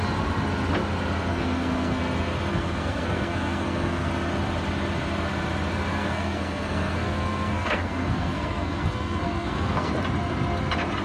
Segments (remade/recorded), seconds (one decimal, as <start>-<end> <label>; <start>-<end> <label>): 0.0-1.3 recorded; 1.3-2.0 remade; 2.0-2.5 recorded; 2.5-4.1 remade; 4.1-5.9 recorded; 5.9-9.9 remade; 9.9-11.0 recorded

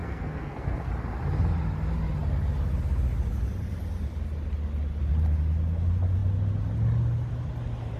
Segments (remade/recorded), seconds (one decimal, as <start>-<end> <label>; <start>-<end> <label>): 0.0-0.9 remade; 0.9-8.0 recorded